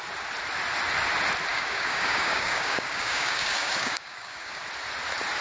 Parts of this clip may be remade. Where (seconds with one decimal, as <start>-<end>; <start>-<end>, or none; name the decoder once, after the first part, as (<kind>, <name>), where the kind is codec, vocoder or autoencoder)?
1.5-4.6 (codec, DAC)